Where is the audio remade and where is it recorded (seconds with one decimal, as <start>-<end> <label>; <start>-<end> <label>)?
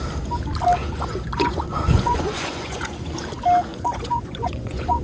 0.0-0.8 recorded; 0.8-3.2 remade; 3.2-3.7 recorded; 3.7-5.0 remade